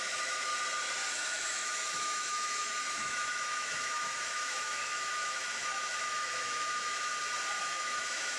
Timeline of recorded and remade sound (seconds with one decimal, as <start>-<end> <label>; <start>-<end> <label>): 0.0-0.5 remade; 0.5-1.1 recorded; 1.1-7.1 remade; 7.1-7.6 recorded; 7.6-8.4 remade